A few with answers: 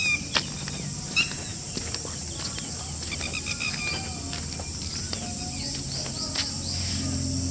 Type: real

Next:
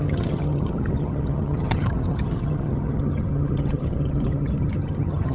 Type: fake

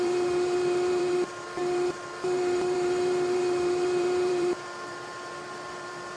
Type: fake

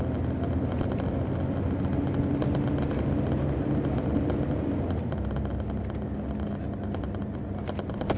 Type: real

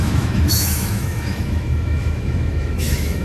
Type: fake